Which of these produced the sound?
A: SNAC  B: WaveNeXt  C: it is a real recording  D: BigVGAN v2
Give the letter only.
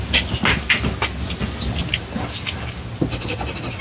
C